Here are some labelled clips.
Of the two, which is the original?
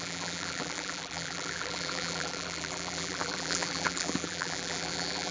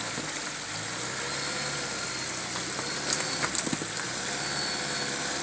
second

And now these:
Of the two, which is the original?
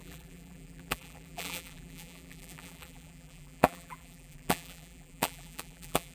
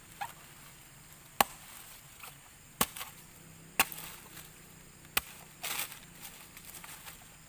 second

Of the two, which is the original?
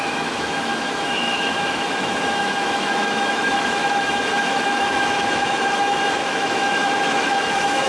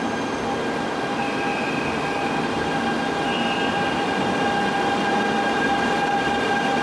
second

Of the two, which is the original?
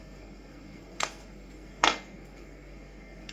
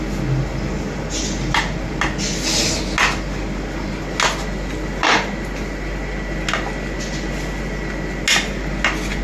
second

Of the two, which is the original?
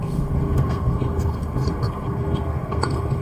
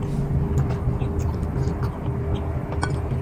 second